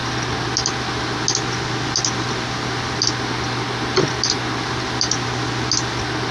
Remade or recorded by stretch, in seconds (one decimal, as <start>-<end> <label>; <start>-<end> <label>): 0.0-6.3 recorded